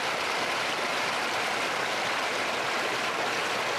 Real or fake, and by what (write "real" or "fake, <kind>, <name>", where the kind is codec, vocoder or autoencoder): fake, vocoder, BigVGAN v2